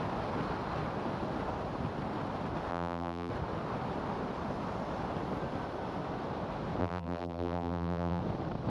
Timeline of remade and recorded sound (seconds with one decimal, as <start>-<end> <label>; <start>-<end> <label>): 0.0-2.7 recorded; 2.7-3.3 remade; 3.3-6.8 recorded; 6.8-8.2 remade; 8.2-8.7 recorded